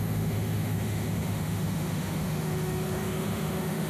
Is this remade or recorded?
remade